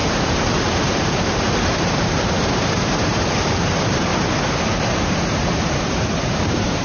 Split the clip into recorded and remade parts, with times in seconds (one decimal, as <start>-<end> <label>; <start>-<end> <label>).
0.0-4.1 remade; 4.1-4.9 recorded; 4.9-6.8 remade